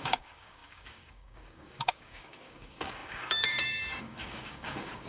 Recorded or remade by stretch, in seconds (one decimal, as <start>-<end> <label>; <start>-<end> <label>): 0.0-5.1 remade

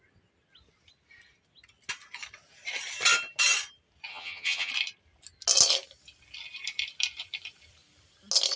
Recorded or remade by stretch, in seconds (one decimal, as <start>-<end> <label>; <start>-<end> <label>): 0.0-4.1 recorded; 4.1-4.7 remade; 4.7-8.6 recorded

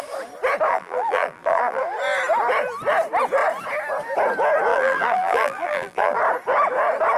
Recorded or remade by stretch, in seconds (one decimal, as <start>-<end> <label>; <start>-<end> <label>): 0.0-0.7 recorded; 0.7-1.8 remade; 1.8-4.7 recorded; 4.7-6.2 remade; 6.2-7.2 recorded

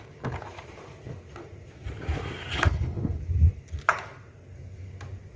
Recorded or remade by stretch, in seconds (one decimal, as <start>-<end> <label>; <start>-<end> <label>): 0.0-2.5 recorded; 2.5-3.2 remade; 3.2-5.4 recorded

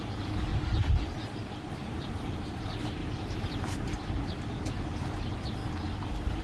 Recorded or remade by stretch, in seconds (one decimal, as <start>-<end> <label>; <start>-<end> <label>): 0.0-0.5 recorded; 0.5-1.2 remade; 1.2-3.0 recorded; 3.0-3.6 remade; 3.6-6.4 recorded

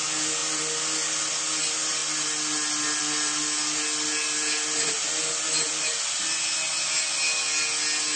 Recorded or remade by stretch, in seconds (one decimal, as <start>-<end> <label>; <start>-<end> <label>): 0.0-8.2 recorded

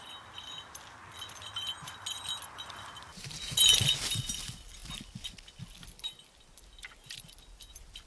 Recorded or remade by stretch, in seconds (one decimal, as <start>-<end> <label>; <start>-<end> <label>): 0.0-3.1 recorded; 3.1-3.7 remade; 3.7-8.1 recorded

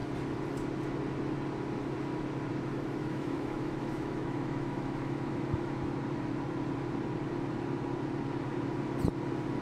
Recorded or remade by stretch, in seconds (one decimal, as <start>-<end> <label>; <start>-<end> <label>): 0.0-3.0 recorded; 3.0-5.8 remade; 5.8-9.6 recorded